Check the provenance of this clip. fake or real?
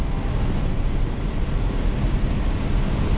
real